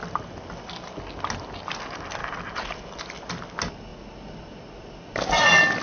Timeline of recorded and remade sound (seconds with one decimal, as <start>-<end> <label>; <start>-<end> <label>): 0.0-5.8 recorded